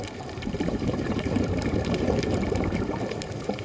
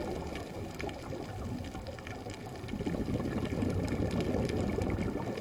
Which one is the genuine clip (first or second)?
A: second